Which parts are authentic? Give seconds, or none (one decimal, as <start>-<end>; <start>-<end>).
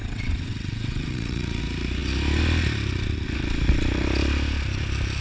1.6-5.2